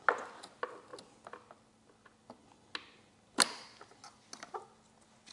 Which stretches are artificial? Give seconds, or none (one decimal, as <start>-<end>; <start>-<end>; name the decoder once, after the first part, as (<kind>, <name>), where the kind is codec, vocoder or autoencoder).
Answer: none